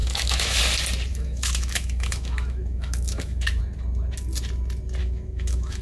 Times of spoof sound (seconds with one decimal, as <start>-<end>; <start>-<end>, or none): 0.0-0.6; 1.1-3.6; 5.0-5.8